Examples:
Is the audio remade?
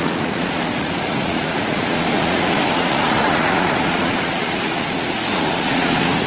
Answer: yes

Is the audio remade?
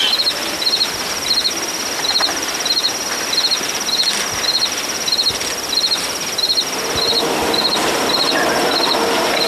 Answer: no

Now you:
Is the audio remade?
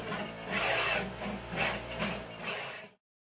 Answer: no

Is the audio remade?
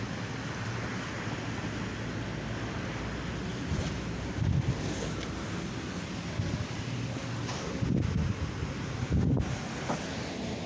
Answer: no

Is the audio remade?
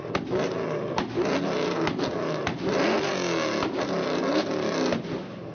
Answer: no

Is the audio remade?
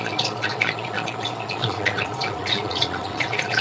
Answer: yes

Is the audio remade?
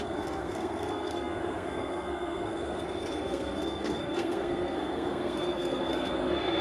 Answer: yes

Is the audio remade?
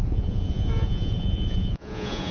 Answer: yes